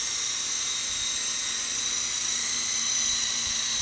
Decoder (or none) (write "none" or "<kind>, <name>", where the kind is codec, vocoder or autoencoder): none